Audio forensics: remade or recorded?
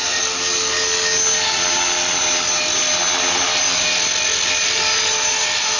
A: recorded